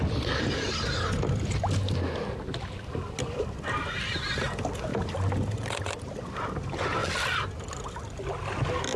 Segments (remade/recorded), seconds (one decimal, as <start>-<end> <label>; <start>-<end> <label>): 0.0-9.0 recorded